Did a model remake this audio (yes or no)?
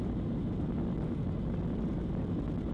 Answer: no